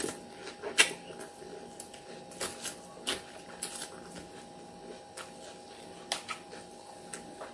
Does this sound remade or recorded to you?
recorded